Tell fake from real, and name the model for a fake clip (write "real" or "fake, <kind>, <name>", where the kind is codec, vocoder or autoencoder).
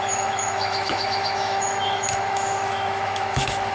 fake, autoencoder, DAC-VAE